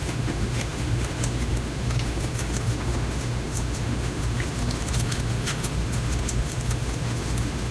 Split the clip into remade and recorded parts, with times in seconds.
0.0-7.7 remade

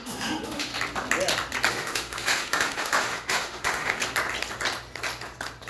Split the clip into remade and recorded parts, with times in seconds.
0.0-0.7 remade; 0.7-1.7 recorded; 1.7-4.0 remade; 4.0-5.7 recorded

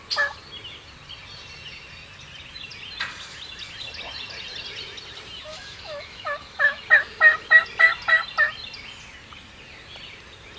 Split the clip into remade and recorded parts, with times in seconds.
0.0-5.5 recorded; 5.5-6.8 remade; 6.8-10.6 recorded

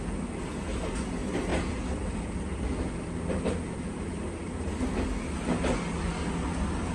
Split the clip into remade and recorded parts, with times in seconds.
0.0-6.9 recorded

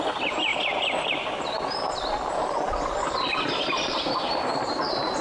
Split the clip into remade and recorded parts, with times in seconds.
0.0-5.2 recorded